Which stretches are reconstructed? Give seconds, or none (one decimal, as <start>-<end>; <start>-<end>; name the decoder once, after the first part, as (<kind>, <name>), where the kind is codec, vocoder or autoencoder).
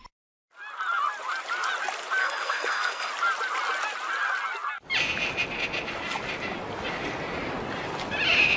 2.2-3.1 (codec, SNAC)